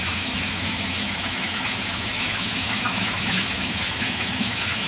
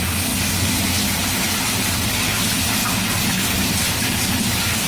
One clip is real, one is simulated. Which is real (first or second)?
second